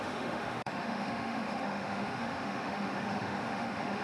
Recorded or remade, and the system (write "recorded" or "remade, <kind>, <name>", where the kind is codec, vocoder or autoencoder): remade, autoencoder, DAC-VAE